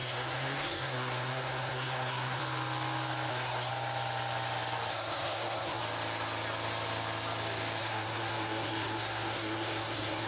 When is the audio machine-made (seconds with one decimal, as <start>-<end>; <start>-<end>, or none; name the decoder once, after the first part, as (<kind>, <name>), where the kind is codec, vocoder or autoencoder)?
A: 0.0-2.4 (codec, SNAC); 3.3-3.7; 4.9-5.8; 7.8-10.3